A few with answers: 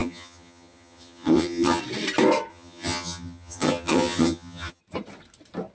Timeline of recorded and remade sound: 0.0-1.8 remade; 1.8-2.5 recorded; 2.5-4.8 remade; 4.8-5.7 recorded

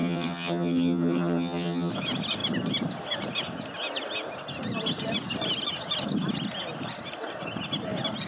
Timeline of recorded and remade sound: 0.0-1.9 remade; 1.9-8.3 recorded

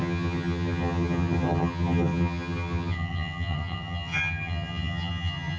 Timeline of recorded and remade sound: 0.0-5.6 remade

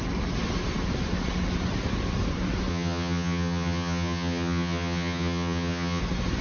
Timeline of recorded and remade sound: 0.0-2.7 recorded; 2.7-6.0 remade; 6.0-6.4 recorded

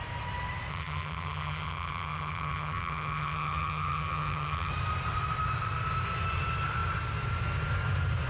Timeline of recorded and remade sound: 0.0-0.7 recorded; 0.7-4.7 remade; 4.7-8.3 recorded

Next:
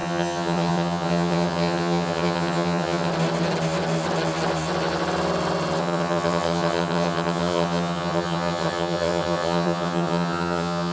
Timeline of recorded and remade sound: 0.0-3.1 remade; 3.1-5.8 recorded; 5.8-10.9 remade